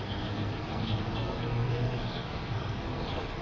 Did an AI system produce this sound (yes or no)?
yes